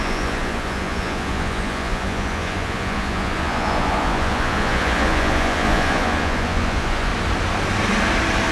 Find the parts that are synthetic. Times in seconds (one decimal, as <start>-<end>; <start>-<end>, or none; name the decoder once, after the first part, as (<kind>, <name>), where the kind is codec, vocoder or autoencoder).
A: 0.0-7.1 (vocoder, Vocos)